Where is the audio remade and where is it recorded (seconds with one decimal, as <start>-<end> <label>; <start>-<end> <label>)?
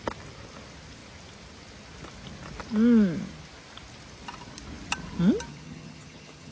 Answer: 0.0-5.5 recorded; 5.5-6.5 remade